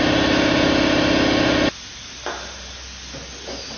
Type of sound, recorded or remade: recorded